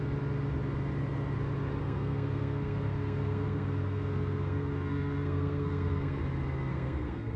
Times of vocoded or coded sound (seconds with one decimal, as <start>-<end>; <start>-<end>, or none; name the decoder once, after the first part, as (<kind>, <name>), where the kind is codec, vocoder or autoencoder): 1.8-6.2 (codec, SNAC); 6.7-7.4